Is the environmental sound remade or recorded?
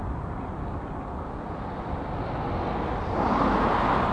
recorded